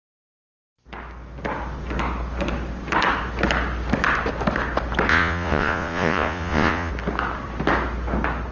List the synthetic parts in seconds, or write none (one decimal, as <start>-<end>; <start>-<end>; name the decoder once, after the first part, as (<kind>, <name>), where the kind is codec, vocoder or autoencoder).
5.1-6.9 (vocoder, Vocos)